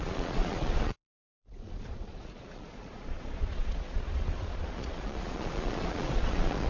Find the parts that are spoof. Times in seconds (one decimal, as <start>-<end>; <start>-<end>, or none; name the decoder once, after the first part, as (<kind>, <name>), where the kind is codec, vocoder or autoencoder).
0.0-6.7 (vocoder, Vocos)